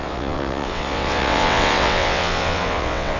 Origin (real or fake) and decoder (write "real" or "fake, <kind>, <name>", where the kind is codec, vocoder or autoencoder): fake, vocoder, WaveNeXt